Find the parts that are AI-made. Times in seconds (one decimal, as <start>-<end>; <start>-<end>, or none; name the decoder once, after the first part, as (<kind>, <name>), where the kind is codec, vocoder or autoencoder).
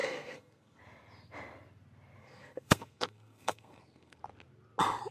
0.0-0.8 (codec, SNAC); 2.2-4.2